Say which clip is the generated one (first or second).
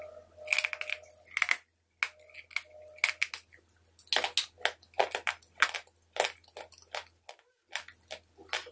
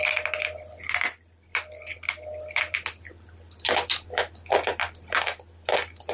second